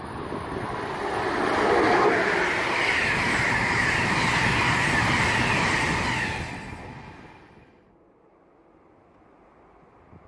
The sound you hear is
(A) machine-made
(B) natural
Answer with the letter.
B